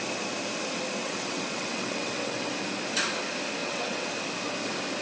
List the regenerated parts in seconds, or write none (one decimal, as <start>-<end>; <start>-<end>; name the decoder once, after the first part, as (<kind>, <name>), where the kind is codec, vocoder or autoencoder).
1.0-2.5 (vocoder, WaveNeXt); 3.6-4.1